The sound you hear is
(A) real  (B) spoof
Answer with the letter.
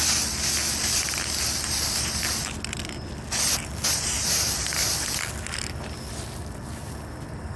A